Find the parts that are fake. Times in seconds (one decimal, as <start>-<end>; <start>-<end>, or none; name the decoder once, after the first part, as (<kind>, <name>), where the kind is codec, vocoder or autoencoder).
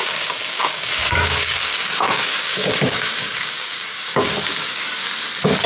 0.0-5.0 (codec, DAC)